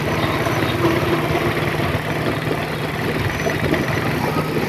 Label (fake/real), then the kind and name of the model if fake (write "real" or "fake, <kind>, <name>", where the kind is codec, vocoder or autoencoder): real